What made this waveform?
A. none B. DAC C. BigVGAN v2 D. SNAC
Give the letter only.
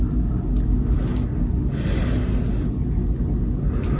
A